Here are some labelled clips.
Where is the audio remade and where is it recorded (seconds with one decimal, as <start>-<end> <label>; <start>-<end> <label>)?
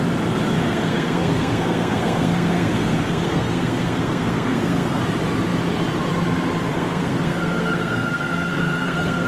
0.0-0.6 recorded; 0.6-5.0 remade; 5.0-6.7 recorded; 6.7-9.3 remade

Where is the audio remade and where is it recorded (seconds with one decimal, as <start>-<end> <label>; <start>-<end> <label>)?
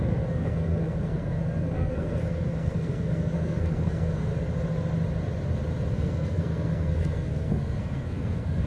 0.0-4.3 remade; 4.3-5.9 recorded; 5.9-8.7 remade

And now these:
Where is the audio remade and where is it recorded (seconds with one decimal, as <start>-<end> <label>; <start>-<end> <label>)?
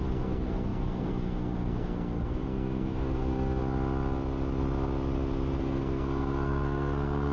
0.0-3.6 remade; 3.6-5.6 recorded; 5.6-7.3 remade